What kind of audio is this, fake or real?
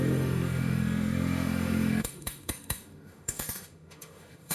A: fake